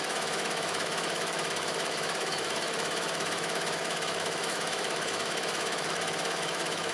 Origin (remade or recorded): remade